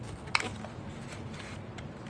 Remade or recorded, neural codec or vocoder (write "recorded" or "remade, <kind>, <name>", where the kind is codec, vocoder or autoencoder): recorded